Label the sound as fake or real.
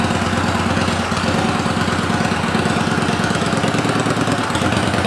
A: real